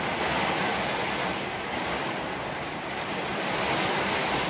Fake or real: real